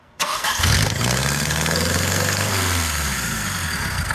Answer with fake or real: fake